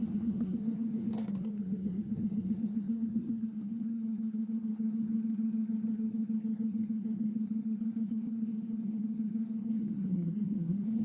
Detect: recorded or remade remade